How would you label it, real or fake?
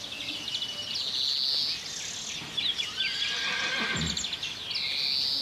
real